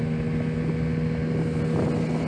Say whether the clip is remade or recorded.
recorded